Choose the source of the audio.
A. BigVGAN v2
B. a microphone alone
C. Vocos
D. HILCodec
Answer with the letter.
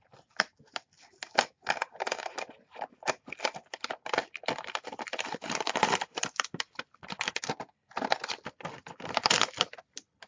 B